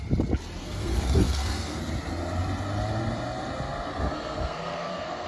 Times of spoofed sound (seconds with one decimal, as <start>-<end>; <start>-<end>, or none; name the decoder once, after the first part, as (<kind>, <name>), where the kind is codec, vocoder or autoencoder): 0.6-1.8 (codec, SNAC); 3.9-5.3

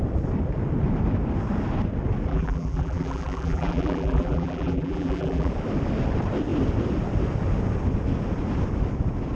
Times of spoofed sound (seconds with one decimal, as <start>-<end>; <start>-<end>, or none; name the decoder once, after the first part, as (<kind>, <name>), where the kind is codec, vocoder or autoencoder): 2.3-5.5 (vocoder, BigVGAN v2)